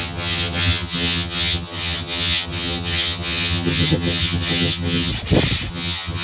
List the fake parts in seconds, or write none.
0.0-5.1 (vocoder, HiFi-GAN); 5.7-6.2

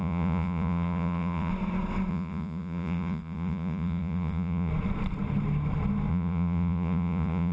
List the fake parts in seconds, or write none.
0.0-1.5 (vocoder, Vocos); 2.1-4.7; 6.1-7.5